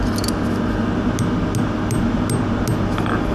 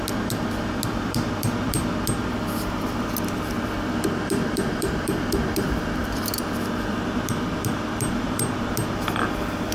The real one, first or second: first